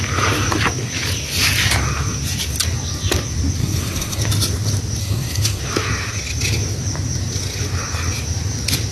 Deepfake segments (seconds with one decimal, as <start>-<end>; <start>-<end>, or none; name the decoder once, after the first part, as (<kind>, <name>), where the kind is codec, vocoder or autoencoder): 3.6-4.2 (codec, SNAC); 5.0-5.6